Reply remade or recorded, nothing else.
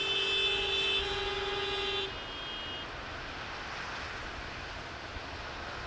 recorded